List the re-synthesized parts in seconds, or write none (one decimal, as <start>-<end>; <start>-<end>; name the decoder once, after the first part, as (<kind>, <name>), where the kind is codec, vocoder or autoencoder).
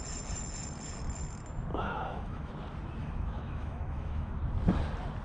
1.7-2.5 (autoencoder, DAC-VAE); 3.0-4.4